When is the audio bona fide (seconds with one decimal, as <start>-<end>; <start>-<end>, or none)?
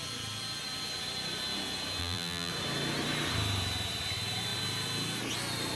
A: 0.0-2.0; 2.5-5.8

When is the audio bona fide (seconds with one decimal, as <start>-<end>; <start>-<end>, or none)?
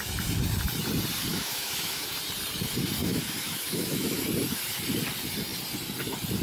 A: 0.0-1.3; 2.1-3.0; 4.2-6.4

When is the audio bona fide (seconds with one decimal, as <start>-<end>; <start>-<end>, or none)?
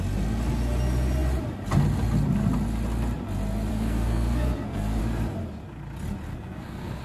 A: 0.0-3.7; 5.0-6.3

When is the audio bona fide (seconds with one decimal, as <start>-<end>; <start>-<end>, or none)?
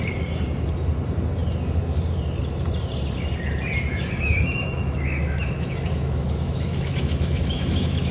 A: 0.0-3.9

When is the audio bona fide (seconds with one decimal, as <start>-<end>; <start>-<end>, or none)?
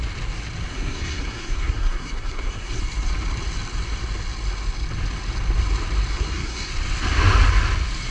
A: 0.0-0.7; 2.8-6.1; 6.7-8.1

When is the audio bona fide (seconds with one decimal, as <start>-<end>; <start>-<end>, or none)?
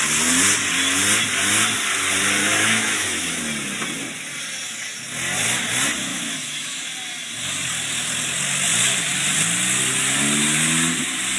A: 0.0-2.4; 3.4-6.1; 6.8-11.4